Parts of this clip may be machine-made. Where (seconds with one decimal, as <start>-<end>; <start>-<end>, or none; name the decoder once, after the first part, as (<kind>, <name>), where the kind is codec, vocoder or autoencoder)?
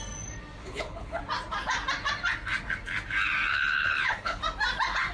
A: 0.6-1.2 (codec, HILCodec); 3.5-4.4